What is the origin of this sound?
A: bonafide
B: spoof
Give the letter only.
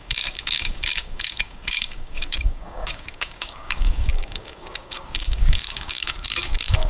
B